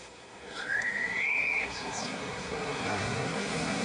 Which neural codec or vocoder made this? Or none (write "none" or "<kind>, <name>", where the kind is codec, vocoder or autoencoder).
codec, SNAC